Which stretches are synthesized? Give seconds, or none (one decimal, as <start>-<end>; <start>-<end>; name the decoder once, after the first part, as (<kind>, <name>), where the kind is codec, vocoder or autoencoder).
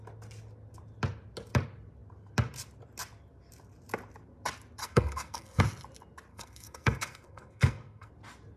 4.8-5.6 (codec, SNAC); 6.3-8.1